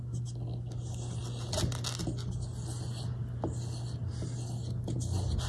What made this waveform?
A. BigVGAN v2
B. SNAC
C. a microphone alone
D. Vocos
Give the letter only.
C